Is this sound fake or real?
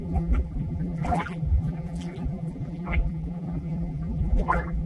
fake